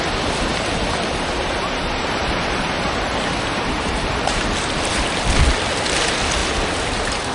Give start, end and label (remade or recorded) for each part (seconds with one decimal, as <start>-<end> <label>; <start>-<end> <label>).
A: 0.0-0.5 recorded; 0.5-4.4 remade; 4.4-6.4 recorded; 6.4-7.3 remade